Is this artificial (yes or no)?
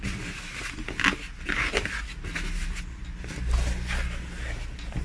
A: no